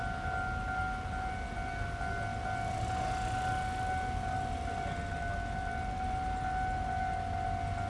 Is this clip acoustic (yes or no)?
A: yes